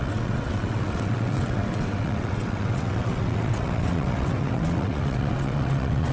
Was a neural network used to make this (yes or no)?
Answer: yes